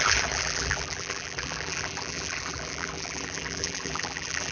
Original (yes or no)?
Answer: no